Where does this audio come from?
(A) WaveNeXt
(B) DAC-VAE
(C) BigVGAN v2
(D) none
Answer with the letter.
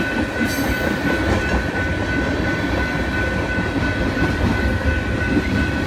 D